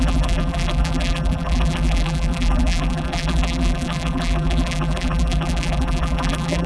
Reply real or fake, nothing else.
fake